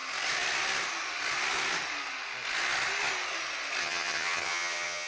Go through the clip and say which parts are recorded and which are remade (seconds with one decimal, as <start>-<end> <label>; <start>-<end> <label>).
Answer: 0.0-3.8 recorded; 3.8-5.1 remade